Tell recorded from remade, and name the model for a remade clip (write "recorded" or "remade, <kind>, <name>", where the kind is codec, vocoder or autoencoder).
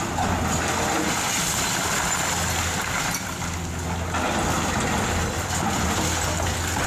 recorded